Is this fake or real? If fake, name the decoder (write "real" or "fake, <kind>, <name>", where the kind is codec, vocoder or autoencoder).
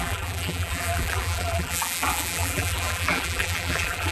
fake, vocoder, BigVGAN v2